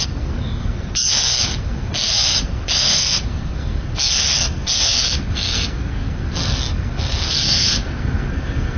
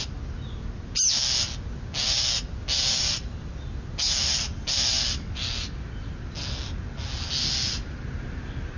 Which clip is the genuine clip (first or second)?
second